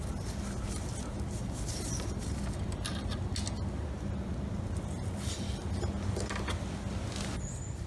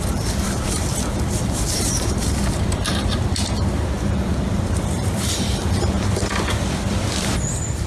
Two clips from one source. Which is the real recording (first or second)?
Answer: first